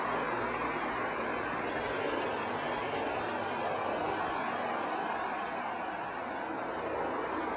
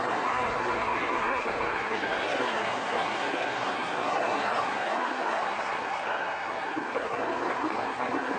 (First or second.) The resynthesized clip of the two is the second